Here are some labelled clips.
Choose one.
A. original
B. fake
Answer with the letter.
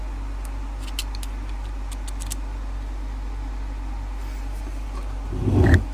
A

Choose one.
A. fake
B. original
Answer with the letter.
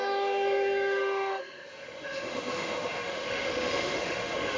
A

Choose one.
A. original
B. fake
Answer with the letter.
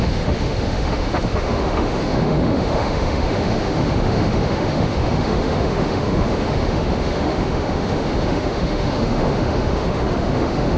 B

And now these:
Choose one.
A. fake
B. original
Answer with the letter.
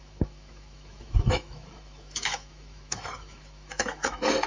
A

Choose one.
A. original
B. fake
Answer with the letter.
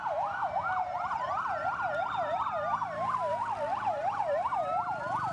A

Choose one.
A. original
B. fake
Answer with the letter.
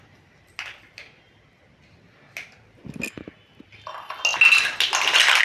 A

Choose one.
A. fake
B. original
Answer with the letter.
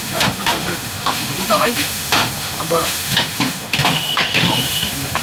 A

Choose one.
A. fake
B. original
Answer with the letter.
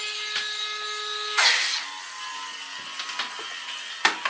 B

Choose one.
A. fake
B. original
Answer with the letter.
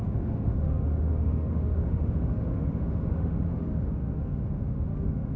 A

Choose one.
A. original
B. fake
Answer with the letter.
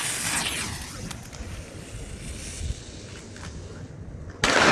A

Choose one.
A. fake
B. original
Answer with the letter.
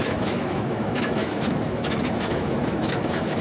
A